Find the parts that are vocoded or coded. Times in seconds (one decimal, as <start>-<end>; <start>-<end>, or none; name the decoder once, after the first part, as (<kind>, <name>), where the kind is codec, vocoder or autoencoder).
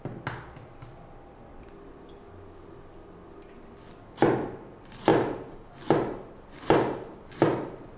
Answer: none